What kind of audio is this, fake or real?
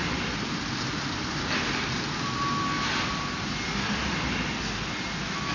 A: real